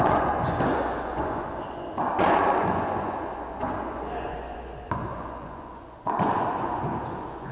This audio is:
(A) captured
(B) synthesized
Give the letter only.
B